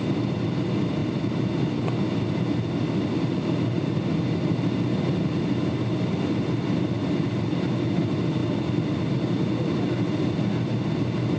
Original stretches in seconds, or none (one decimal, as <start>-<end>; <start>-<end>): 0.0-11.4